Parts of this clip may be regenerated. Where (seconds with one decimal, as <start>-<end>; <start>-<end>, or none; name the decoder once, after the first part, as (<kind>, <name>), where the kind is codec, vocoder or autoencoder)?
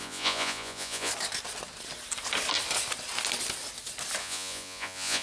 0.0-1.1 (vocoder, Vocos); 4.2-5.2